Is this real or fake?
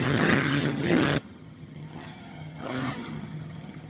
fake